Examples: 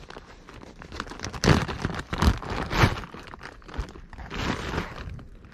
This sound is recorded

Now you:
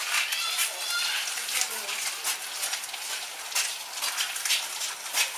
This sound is recorded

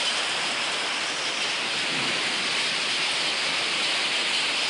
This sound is recorded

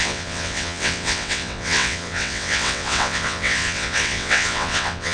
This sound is remade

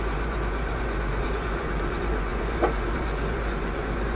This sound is remade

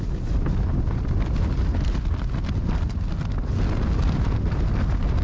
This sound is recorded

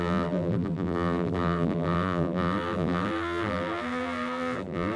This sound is remade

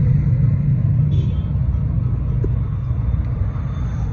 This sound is recorded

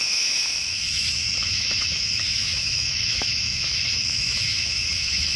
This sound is remade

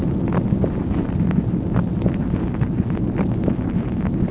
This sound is recorded